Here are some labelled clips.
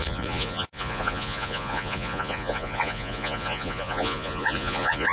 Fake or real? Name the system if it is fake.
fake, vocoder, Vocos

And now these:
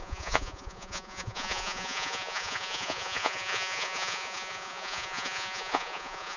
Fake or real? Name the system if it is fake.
fake, vocoder, Vocos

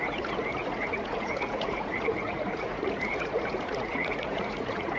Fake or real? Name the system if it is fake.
fake, vocoder, Vocos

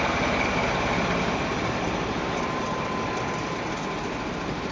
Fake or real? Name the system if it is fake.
real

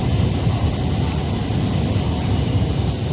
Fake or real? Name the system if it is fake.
real